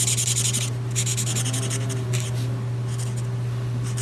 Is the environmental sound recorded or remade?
recorded